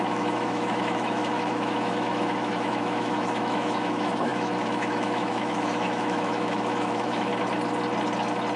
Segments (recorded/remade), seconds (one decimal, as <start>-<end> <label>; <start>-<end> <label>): 0.0-7.3 remade; 7.3-8.6 recorded